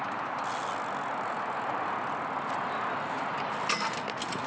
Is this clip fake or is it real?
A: real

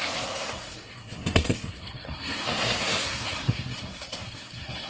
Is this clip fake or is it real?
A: fake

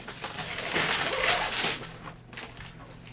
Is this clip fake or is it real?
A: real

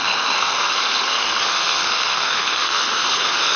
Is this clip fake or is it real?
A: fake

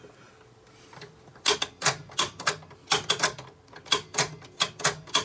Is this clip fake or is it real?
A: real